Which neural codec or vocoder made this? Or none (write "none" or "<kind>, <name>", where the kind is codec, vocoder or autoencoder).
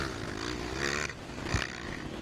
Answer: none